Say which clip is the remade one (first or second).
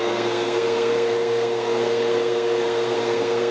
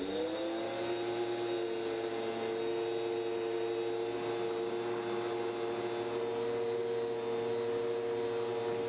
first